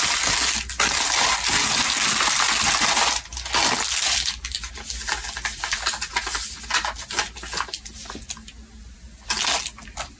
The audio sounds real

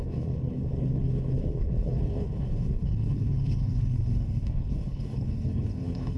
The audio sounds fake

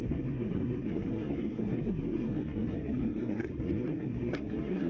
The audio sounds fake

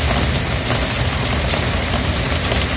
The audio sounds real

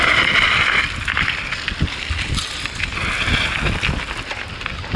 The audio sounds real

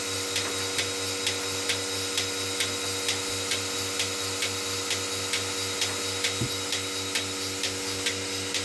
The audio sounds real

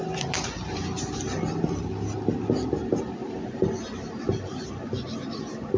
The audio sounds real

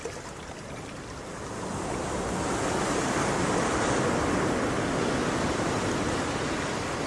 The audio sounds real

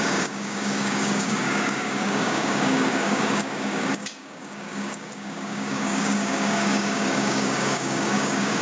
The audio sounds fake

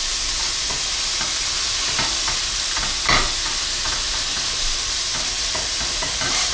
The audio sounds real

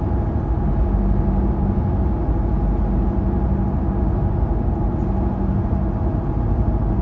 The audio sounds real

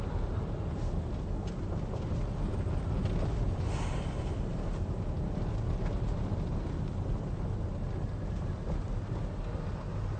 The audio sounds real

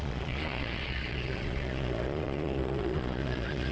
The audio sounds fake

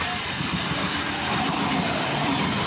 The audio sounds fake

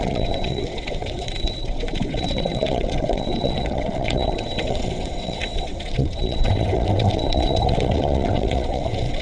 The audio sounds fake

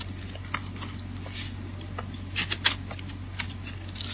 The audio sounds real